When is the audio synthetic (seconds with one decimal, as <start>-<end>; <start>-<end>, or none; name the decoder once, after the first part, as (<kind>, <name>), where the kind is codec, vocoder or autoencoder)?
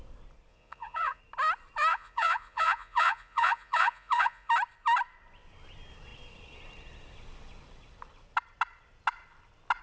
0.5-1.2 (vocoder, Vocos); 1.9-4.5